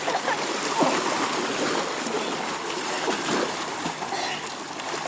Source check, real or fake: real